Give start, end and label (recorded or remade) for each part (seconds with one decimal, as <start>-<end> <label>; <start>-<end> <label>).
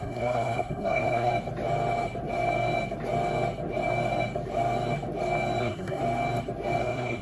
0.0-1.3 remade; 1.3-5.6 recorded; 5.6-6.0 remade; 6.0-6.8 recorded; 6.8-7.2 remade